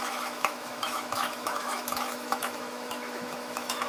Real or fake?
fake